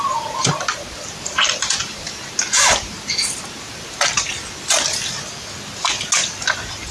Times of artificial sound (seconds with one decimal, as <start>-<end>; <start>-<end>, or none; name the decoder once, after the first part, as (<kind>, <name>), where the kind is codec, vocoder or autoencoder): 0.4-4.4 (vocoder, BigVGAN v2)